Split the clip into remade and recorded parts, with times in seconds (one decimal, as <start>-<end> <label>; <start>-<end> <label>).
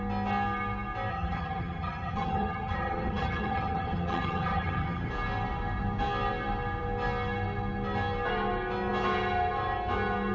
0.0-1.1 recorded; 1.1-5.1 remade; 5.1-10.3 recorded